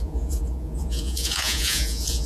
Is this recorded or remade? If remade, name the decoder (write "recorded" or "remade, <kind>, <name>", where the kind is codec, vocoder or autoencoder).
remade, vocoder, Vocos